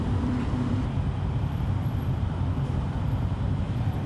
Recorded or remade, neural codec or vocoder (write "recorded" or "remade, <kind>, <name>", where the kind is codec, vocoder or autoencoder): remade, vocoder, BigVGAN v2